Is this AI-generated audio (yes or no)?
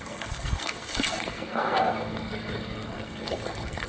yes